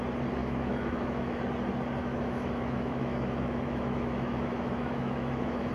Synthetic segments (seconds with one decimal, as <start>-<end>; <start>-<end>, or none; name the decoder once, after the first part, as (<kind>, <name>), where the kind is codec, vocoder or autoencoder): 0.4-1.4 (autoencoder, DAC-VAE); 2.0-5.7